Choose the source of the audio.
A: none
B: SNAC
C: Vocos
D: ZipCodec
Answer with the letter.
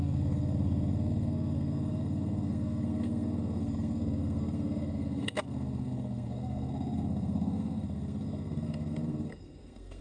B